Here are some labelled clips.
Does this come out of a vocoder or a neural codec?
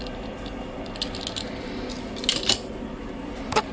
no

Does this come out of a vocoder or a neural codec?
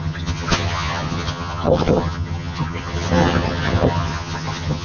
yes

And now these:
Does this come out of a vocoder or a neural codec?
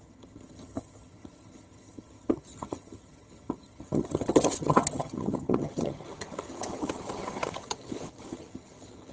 yes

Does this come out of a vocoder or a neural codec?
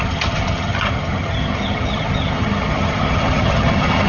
yes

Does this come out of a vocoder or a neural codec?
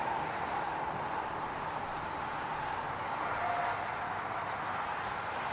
no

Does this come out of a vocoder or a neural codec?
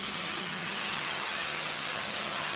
yes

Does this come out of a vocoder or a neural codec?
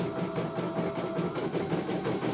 no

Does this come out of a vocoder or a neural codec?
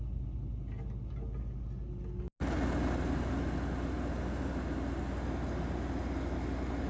no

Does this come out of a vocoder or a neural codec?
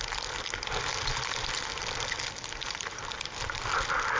no